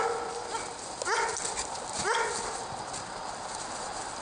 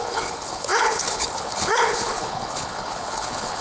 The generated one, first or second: second